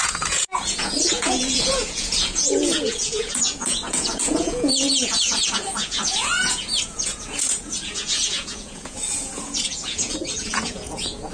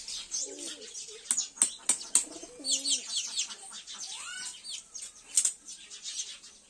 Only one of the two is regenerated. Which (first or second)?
first